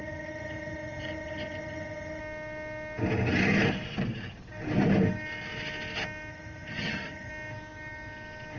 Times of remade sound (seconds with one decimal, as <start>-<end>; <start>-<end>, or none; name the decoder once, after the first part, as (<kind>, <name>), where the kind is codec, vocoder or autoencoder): 0.0-2.2 (vocoder, HiFi-GAN); 6.3-7.3